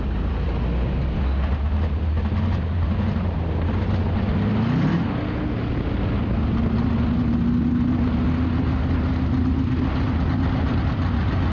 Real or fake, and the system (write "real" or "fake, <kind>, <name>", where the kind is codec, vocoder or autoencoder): real